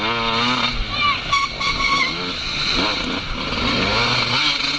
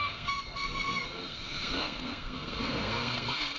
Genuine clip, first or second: first